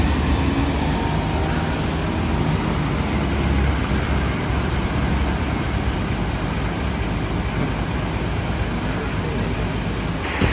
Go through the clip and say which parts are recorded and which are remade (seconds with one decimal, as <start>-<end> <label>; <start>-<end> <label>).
0.0-3.8 recorded; 3.8-6.4 remade; 6.4-10.5 recorded